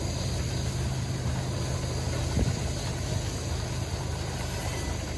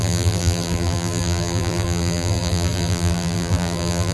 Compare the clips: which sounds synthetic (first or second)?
second